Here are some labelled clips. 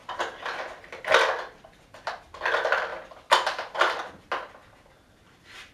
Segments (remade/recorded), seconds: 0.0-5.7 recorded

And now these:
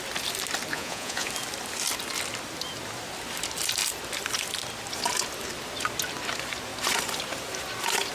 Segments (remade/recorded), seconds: 0.0-0.7 recorded; 0.7-1.3 remade; 1.3-8.1 recorded